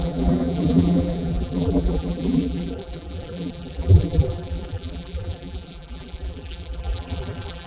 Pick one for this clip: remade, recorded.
remade